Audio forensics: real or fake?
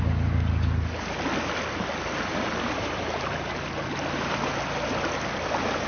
real